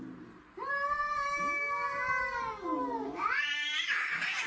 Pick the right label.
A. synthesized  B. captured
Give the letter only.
B